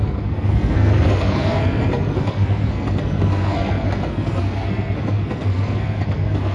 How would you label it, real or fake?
fake